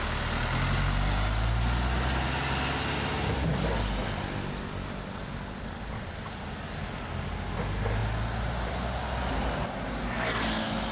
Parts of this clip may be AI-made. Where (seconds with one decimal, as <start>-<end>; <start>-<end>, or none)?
none